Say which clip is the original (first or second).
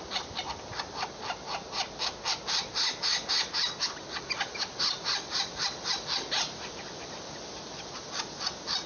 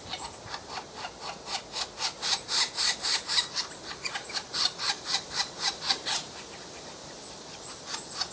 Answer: first